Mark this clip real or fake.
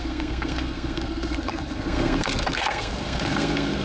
fake